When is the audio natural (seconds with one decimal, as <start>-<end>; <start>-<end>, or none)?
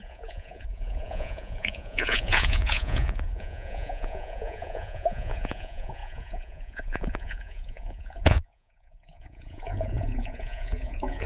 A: none